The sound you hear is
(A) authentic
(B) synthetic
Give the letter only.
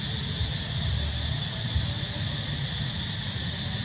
A